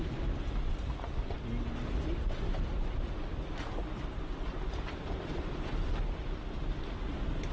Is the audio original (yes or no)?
yes